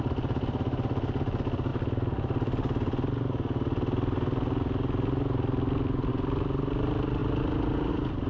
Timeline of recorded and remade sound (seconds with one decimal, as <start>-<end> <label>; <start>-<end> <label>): 0.0-8.3 recorded

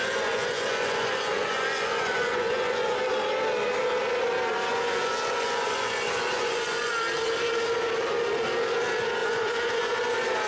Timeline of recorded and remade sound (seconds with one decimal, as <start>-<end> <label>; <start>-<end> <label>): 0.0-3.0 remade; 3.0-4.7 recorded; 4.7-6.9 remade; 6.9-9.2 recorded; 9.2-9.9 remade; 9.9-10.5 recorded

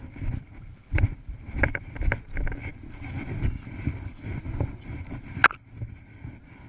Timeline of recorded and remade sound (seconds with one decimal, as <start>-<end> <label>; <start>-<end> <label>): 0.0-6.7 recorded

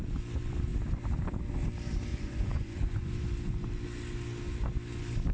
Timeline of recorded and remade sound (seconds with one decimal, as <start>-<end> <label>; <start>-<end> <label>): 0.0-2.1 recorded; 2.1-3.1 remade; 3.1-5.3 recorded

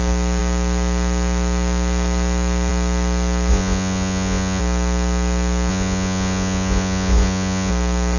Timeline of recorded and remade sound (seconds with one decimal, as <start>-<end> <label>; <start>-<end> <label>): 0.0-3.5 recorded; 3.5-4.6 remade; 4.6-5.7 recorded; 5.7-7.7 remade; 7.7-8.2 recorded

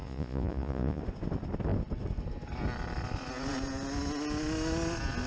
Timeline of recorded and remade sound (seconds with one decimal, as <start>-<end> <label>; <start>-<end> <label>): 0.0-1.0 remade; 1.0-5.3 recorded

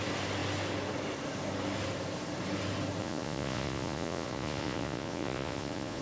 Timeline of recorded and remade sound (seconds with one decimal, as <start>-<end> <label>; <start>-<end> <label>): 0.0-3.0 recorded; 3.0-6.0 remade